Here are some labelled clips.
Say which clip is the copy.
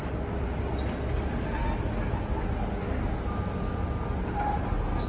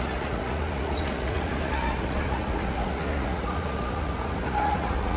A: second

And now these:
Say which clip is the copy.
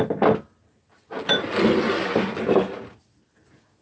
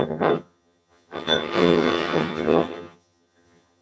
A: second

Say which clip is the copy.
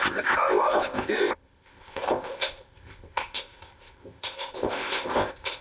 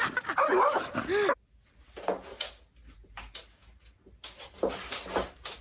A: first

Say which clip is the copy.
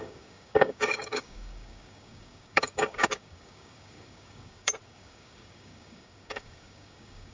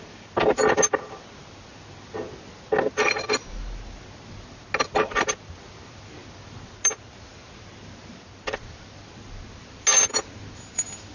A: first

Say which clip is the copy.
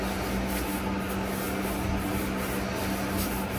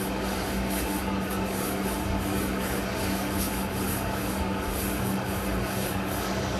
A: second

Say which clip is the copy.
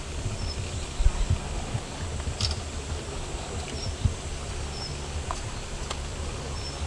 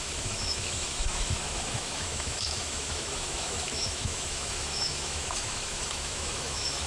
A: second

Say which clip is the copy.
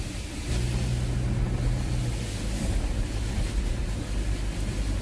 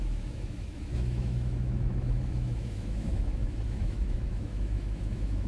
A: second